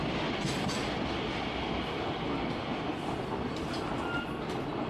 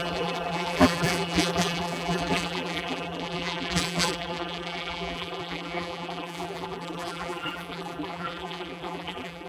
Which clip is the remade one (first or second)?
second